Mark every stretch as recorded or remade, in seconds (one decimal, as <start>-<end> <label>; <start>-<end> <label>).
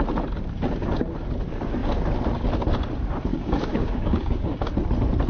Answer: 0.0-3.3 recorded; 3.3-4.7 remade; 4.7-5.3 recorded